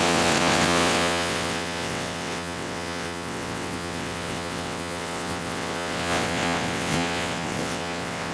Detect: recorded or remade remade